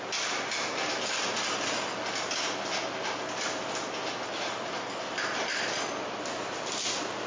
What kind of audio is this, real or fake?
real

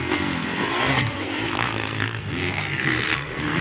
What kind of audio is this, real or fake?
fake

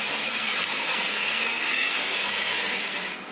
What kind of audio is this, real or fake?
fake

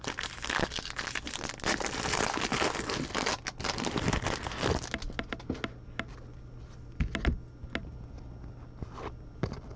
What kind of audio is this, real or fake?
real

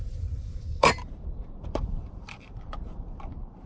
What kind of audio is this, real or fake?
fake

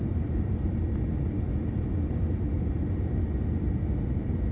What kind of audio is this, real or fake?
real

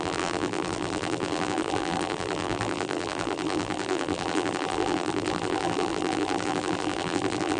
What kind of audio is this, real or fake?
fake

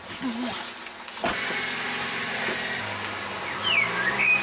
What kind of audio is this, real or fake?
real